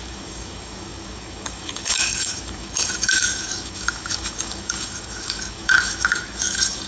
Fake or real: fake